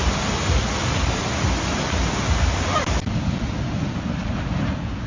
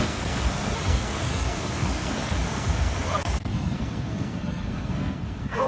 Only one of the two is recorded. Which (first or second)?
first